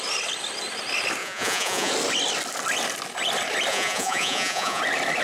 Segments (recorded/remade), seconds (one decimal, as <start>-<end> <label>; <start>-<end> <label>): 0.0-1.2 recorded; 1.2-1.9 remade; 1.9-3.7 recorded; 3.7-4.8 remade; 4.8-5.2 recorded